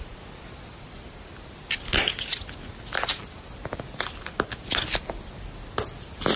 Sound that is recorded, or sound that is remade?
recorded